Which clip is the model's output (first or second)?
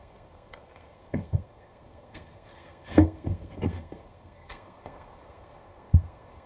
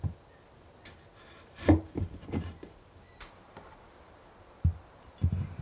first